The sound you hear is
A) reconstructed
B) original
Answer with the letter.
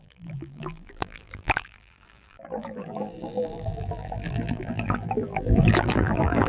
A